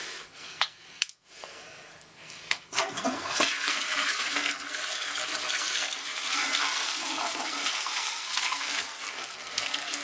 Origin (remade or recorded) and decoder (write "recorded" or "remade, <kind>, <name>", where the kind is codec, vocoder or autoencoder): remade, codec, SNAC